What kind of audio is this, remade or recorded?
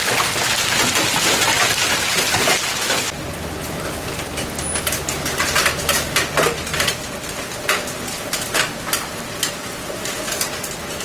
recorded